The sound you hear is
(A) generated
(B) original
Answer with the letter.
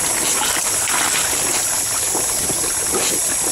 B